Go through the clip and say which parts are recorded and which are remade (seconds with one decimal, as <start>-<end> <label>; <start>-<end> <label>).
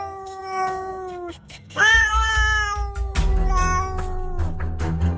0.0-2.3 remade; 2.3-5.2 recorded